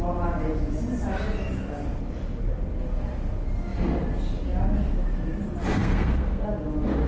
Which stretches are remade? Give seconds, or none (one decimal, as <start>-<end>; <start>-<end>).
5.8-6.5